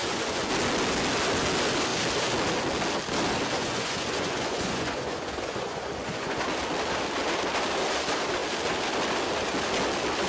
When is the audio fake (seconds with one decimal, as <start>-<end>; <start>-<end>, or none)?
0.0-0.5; 3.6-6.4